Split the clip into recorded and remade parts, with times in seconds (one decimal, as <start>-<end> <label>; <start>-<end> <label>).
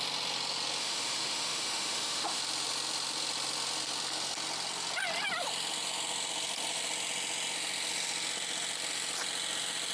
0.0-0.8 recorded; 0.8-2.4 remade; 2.4-9.9 recorded